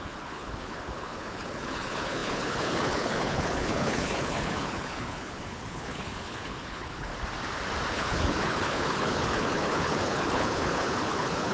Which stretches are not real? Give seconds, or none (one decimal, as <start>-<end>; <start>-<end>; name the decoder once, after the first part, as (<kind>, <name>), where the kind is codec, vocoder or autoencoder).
0.0-7.1 (codec, HILCodec); 7.9-11.5